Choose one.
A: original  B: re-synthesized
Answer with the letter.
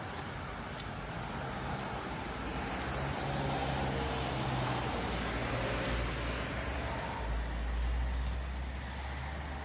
A